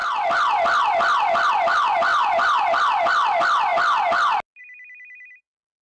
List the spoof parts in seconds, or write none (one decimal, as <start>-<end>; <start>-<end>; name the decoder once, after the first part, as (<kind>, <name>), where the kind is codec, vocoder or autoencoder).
none